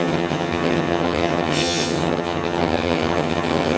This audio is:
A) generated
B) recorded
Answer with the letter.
A